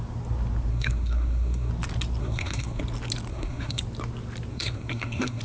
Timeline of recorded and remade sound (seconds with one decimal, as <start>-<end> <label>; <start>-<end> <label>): 0.0-0.7 recorded; 0.7-1.7 remade; 1.7-2.2 recorded; 2.2-2.8 remade; 2.8-3.3 recorded; 3.3-3.8 remade; 3.8-4.5 recorded; 4.5-5.4 remade